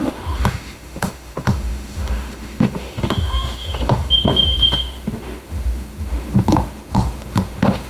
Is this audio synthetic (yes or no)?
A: yes